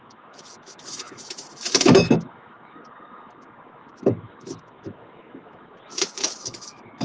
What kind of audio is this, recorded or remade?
remade